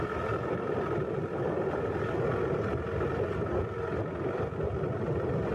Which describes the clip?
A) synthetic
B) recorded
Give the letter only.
B